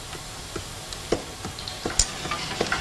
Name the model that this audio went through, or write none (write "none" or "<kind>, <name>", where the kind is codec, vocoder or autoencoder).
none